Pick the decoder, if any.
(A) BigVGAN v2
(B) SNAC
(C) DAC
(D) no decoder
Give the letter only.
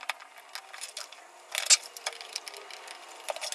D